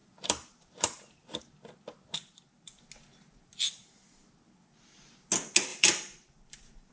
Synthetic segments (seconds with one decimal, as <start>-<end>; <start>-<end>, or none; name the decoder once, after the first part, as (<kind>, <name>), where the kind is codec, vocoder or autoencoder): 0.0-1.4 (vocoder, BigVGAN v2); 2.2-2.7; 5.7-6.9

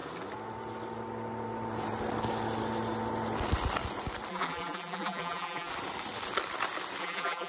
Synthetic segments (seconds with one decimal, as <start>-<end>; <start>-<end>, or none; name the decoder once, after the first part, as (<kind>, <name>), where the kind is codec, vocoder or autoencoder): 4.3-5.7 (vocoder, BigVGAN v2); 7.0-7.5

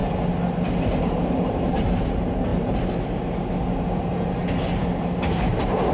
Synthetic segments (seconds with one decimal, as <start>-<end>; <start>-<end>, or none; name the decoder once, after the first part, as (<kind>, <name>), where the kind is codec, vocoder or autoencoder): 0.8-2.5 (vocoder, BigVGAN v2); 5.3-5.9

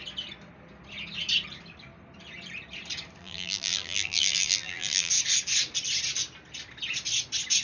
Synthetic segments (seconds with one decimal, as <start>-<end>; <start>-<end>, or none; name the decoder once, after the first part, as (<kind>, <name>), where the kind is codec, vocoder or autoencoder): 3.2-5.1 (vocoder, BigVGAN v2)

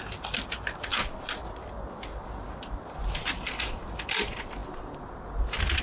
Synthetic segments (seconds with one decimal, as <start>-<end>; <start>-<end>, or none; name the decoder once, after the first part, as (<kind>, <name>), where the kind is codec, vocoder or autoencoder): none

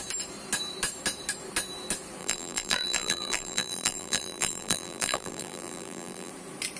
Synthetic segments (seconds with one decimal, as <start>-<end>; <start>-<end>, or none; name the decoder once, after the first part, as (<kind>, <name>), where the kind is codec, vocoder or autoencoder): 2.2-6.3 (vocoder, BigVGAN v2)